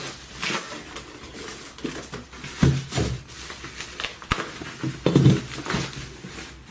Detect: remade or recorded recorded